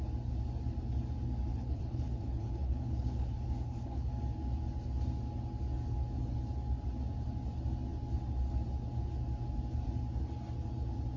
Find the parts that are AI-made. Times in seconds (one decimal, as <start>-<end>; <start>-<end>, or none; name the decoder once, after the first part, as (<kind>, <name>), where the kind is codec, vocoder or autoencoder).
1.5-4.1 (codec, HILCodec)